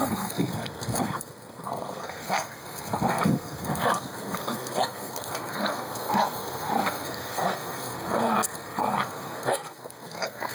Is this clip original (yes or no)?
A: no